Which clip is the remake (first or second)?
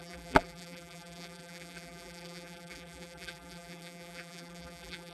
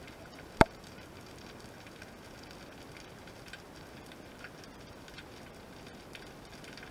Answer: first